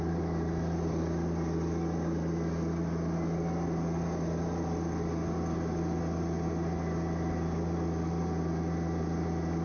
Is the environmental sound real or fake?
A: real